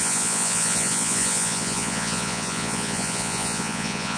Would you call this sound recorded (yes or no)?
no